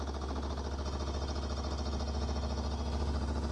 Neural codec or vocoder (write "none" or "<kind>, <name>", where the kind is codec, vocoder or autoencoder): none